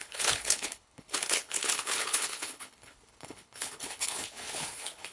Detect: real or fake fake